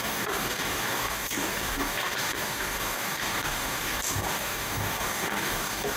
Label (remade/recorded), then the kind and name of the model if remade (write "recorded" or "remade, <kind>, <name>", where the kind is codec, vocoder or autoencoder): remade, codec, DAC